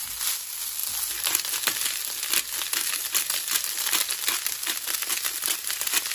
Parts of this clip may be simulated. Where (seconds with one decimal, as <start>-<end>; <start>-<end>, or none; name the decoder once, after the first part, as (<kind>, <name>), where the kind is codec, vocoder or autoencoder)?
none